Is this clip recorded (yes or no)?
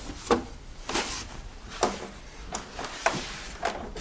yes